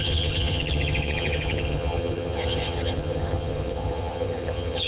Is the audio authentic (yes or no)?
no